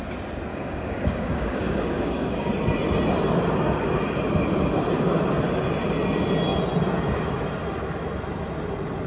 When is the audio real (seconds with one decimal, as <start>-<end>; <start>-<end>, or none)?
0.0-0.5; 2.5-9.1